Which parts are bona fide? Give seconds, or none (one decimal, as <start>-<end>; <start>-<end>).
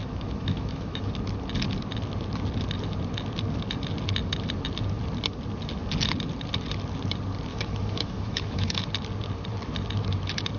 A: 1.1-7.5; 8.8-10.6